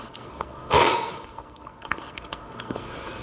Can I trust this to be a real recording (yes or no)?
no